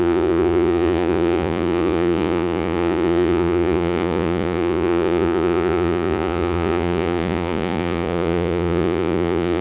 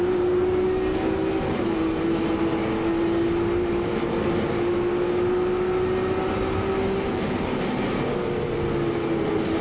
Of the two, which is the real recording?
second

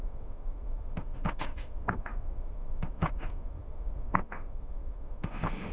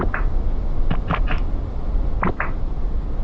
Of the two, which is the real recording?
second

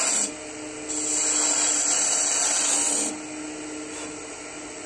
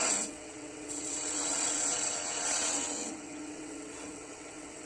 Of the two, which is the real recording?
first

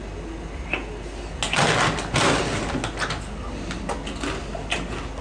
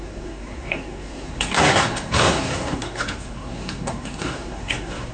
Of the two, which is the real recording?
first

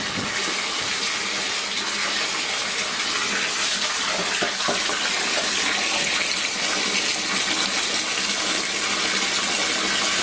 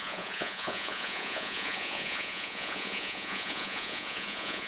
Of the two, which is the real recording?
first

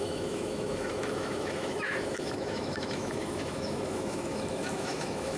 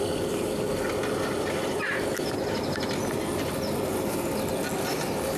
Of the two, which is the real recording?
second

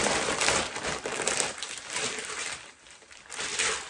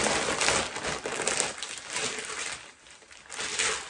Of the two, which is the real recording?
second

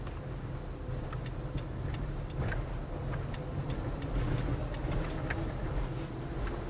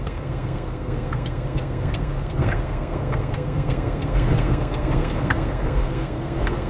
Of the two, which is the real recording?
first